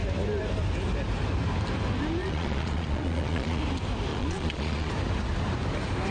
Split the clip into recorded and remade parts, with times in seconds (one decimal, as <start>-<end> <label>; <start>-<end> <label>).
0.0-2.2 recorded; 2.2-3.6 remade; 3.6-4.1 recorded; 4.1-4.9 remade; 4.9-6.1 recorded